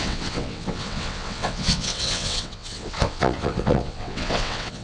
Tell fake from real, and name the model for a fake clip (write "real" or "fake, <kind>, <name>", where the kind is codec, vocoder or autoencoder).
fake, vocoder, WaveNeXt